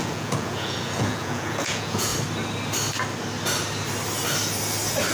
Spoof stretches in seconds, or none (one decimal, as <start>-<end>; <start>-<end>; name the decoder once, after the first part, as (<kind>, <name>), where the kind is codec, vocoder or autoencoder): 0.0-2.1 (vocoder, Vocos)